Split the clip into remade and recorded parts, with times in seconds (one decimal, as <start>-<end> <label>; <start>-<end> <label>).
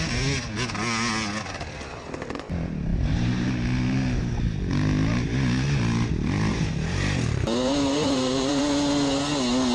0.0-2.9 recorded; 2.9-3.5 remade; 3.5-6.5 recorded; 6.5-8.6 remade; 8.6-9.7 recorded